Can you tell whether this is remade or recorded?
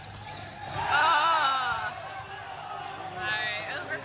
recorded